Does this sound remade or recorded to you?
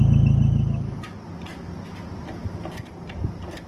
recorded